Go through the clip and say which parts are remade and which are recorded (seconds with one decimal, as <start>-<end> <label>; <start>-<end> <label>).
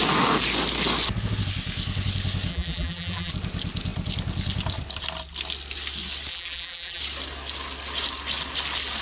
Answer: 0.0-2.5 recorded; 2.5-3.3 remade; 3.3-6.3 recorded; 6.3-7.0 remade; 7.0-9.0 recorded